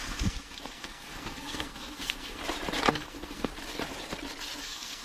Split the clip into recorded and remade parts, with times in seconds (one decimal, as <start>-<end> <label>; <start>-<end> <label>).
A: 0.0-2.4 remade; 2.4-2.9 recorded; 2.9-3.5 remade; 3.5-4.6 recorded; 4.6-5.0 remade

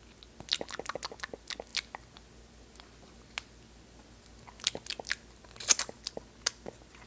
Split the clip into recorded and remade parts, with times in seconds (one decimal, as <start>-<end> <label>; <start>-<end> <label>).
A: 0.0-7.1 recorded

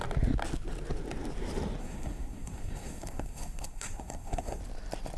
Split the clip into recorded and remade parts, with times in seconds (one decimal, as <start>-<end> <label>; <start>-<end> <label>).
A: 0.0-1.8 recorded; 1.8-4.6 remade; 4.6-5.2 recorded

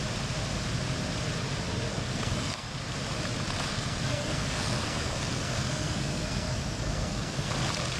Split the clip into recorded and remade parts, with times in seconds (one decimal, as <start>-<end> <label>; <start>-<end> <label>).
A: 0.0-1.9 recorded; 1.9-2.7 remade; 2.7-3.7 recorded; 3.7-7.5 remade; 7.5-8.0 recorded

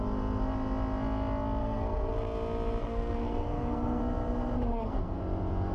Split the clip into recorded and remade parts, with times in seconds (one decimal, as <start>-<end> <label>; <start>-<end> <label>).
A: 0.0-1.6 recorded; 1.6-2.1 remade; 2.1-2.8 recorded; 2.8-4.0 remade; 4.0-4.7 recorded; 4.7-5.2 remade; 5.2-5.7 recorded